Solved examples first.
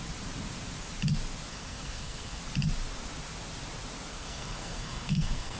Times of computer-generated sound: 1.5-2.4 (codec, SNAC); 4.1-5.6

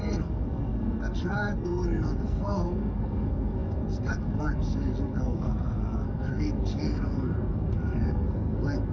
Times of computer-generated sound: 0.0-8.9 (codec, SNAC)